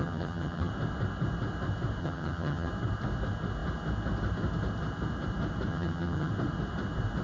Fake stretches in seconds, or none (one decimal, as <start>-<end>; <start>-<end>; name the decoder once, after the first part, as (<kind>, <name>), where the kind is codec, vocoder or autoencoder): 0.0-0.7 (vocoder, HiFi-GAN); 2.0-2.7; 5.7-6.3